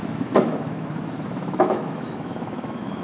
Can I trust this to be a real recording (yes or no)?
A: no